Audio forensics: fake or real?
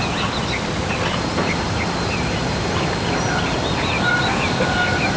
real